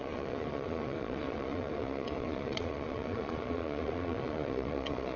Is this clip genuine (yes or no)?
no